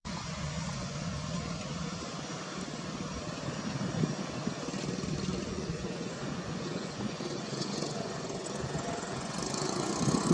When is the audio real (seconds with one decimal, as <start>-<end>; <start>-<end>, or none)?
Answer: 2.3-5.4